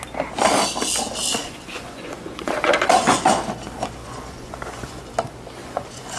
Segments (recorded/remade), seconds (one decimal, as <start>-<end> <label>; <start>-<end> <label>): 0.0-1.4 recorded; 1.4-3.4 remade; 3.4-4.0 recorded; 4.0-5.1 remade; 5.1-5.6 recorded; 5.6-6.2 remade